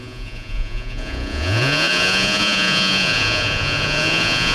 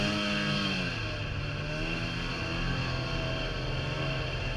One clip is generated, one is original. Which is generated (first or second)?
first